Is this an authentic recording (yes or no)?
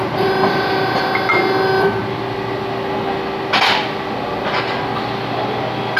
yes